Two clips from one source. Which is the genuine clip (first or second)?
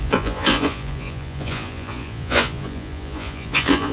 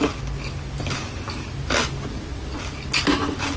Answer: second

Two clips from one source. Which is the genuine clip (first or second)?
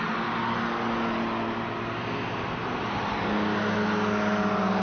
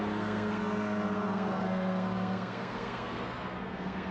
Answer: first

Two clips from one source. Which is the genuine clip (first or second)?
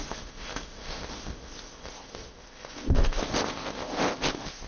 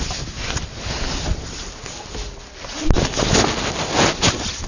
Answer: second